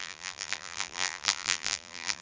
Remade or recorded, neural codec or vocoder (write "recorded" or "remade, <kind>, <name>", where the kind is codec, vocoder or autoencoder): remade, vocoder, BigVGAN v2